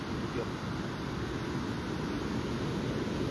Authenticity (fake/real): real